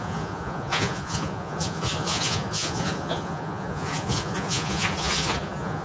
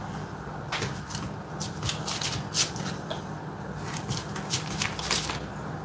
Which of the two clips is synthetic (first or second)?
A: first